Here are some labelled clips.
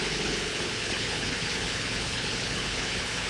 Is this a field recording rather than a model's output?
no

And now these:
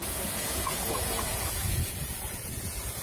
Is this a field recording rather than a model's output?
no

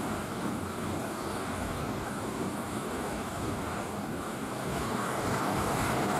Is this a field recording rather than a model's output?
no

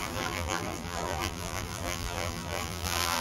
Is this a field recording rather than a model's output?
no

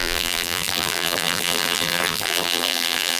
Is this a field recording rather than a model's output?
no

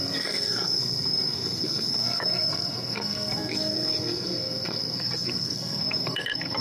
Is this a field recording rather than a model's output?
no